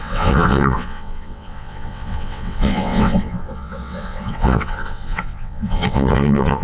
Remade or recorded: remade